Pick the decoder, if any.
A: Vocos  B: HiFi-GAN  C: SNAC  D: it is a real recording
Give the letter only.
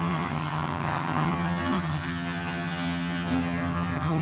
B